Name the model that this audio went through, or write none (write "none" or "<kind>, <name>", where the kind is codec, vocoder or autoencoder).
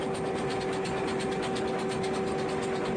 none